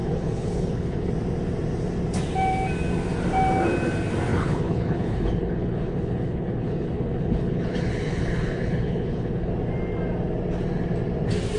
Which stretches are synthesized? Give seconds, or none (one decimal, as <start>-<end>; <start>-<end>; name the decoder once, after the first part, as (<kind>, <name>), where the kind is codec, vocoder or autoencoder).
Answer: 0.0-1.1 (codec, HILCodec); 4.3-9.5